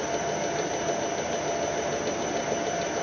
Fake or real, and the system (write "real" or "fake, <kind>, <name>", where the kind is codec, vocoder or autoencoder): real